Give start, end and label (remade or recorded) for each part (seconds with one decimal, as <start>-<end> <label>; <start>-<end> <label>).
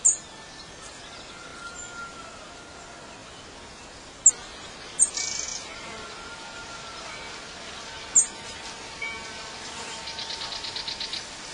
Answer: 0.0-11.5 recorded